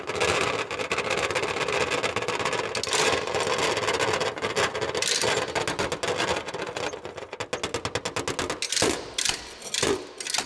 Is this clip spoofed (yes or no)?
no